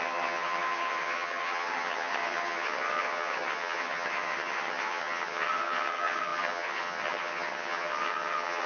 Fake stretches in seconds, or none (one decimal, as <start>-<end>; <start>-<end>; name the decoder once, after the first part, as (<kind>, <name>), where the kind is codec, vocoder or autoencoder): 0.0-8.7 (vocoder, HiFi-GAN)